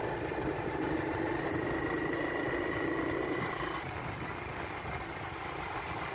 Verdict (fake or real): real